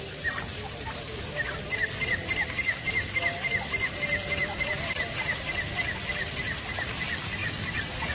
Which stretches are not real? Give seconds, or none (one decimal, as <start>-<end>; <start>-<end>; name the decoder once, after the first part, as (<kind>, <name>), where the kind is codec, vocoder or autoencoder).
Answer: none

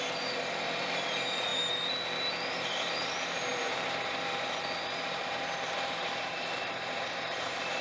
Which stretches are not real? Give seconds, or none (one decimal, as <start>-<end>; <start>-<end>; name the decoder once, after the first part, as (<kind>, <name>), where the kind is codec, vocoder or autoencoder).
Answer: 0.0-1.5 (vocoder, BigVGAN v2); 2.5-7.8

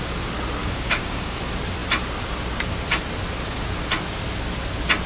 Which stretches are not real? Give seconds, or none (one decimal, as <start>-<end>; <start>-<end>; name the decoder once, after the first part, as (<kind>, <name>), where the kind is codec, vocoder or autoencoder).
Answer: 0.6-1.4 (codec, DAC)